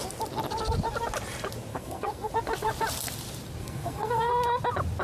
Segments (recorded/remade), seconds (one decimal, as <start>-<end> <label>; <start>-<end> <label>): 0.0-1.7 recorded; 1.7-2.3 remade; 2.3-3.6 recorded; 3.6-4.3 remade; 4.3-5.0 recorded